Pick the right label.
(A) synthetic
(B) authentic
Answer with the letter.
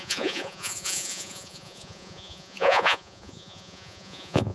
A